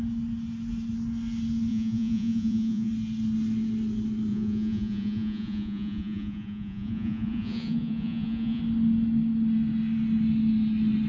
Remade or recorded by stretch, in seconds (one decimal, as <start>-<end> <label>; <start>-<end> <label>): 0.0-1.7 recorded; 1.7-2.9 remade; 2.9-4.3 recorded; 4.3-8.6 remade; 8.6-11.1 recorded